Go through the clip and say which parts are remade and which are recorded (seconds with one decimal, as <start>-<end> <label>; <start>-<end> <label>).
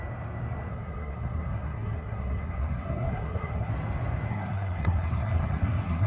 0.0-0.7 recorded; 0.7-3.7 remade; 3.7-4.3 recorded; 4.3-6.1 remade